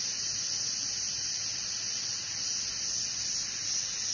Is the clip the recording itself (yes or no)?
yes